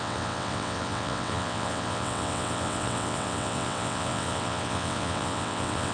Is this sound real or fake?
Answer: fake